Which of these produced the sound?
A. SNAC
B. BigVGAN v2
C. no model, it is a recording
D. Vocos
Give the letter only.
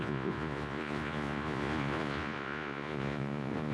D